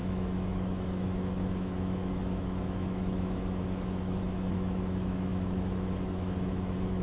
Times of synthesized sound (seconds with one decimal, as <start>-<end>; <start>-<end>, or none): 0.0-7.0